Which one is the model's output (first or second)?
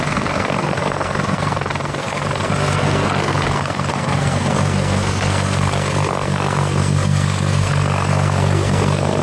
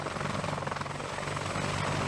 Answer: first